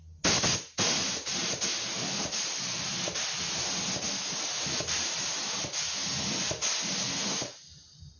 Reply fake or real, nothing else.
real